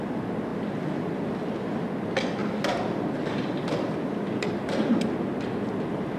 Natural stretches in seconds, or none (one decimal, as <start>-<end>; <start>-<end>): 0.0-2.4; 4.6-6.2

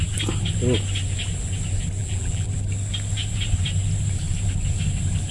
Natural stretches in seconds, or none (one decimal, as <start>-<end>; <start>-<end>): 0.0-2.0; 2.5-5.3

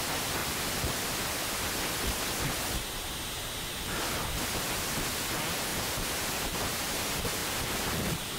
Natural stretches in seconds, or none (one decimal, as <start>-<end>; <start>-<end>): 0.0-5.7; 6.6-7.4